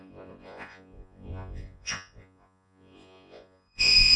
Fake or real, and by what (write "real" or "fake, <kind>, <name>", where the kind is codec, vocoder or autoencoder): fake, vocoder, Vocos